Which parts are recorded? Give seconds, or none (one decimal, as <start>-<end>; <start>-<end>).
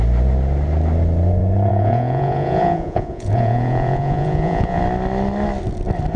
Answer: 0.0-1.7; 4.8-6.2